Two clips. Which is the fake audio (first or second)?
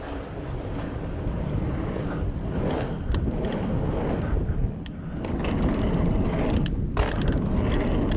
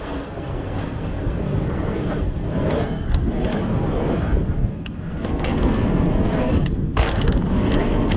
second